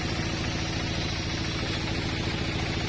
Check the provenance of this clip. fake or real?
real